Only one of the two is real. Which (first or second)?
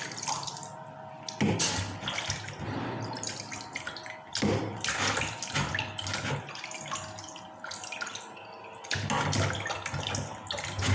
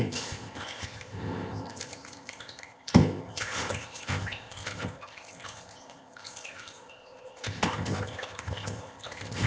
first